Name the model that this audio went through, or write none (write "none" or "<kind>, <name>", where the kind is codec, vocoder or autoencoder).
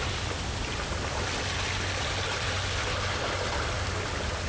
none